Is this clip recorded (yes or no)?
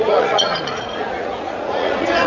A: no